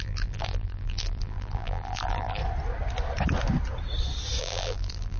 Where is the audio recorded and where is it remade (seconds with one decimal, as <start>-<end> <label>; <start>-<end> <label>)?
0.0-2.4 remade; 2.4-4.4 recorded; 4.4-5.2 remade